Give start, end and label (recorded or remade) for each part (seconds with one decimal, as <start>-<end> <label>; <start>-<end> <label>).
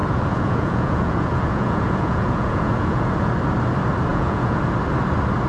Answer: 0.0-3.3 remade; 3.3-4.1 recorded; 4.1-4.6 remade; 4.6-5.5 recorded